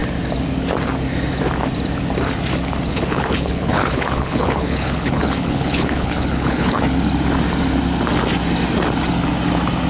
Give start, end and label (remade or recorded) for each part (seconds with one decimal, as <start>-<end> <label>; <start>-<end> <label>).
0.0-2.9 recorded; 2.9-6.8 remade; 6.8-9.9 recorded